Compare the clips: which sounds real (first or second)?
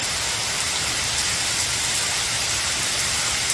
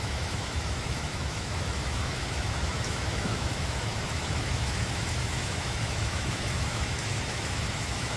first